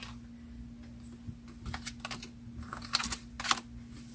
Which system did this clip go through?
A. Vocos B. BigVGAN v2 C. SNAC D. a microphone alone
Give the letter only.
D